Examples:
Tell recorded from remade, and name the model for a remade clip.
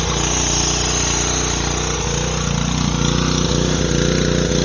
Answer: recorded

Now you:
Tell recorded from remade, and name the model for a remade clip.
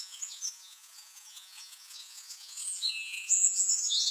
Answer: remade, vocoder, Vocos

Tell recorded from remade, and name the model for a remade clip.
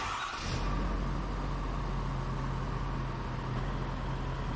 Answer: recorded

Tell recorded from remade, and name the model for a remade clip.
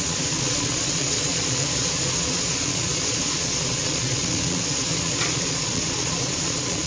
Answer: remade, vocoder, Vocos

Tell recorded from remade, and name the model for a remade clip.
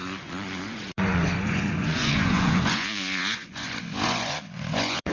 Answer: remade, vocoder, Vocos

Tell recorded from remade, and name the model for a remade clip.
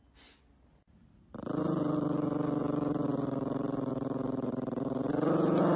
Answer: recorded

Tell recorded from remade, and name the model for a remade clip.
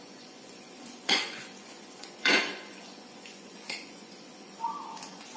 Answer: remade, vocoder, Vocos